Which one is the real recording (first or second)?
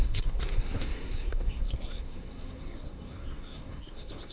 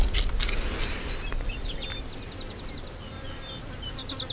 second